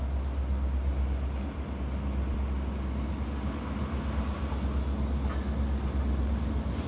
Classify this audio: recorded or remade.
recorded